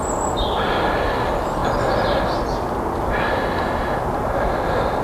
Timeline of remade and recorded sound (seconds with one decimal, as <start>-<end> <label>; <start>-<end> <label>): 0.0-5.0 recorded